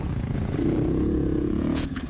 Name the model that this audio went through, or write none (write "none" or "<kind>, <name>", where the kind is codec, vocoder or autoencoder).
vocoder, Vocos